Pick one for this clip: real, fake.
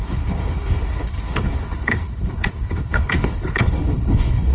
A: fake